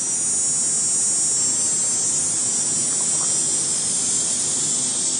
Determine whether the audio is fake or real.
real